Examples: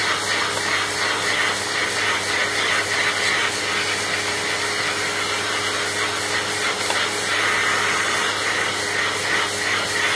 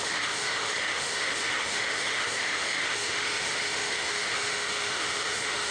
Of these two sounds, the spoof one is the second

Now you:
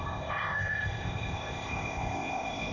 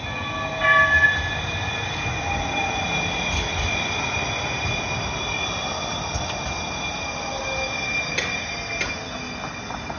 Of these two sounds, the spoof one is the first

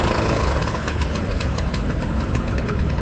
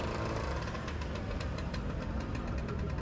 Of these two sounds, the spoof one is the first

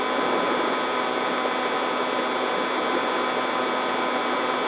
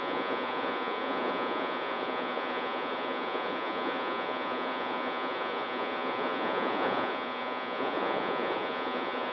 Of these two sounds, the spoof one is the second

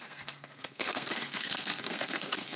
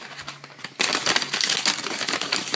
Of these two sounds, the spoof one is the first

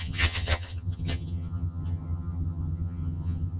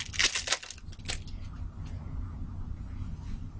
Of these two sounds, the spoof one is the first